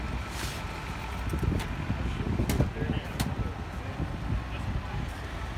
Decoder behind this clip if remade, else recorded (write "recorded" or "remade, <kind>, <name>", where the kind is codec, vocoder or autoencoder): recorded